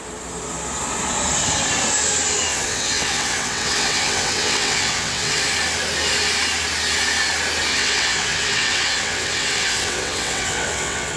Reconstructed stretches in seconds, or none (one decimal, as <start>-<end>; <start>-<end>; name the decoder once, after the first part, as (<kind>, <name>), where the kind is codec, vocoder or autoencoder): 2.5-5.4 (vocoder, WaveNeXt); 7.7-11.2